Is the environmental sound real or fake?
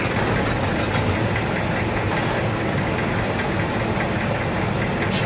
real